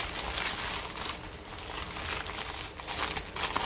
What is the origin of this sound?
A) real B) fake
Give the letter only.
A